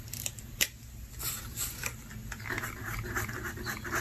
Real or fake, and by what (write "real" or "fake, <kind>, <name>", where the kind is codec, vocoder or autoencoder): real